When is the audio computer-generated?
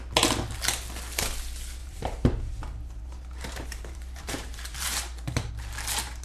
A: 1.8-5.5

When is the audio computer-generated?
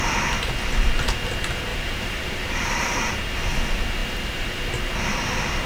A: 1.7-3.1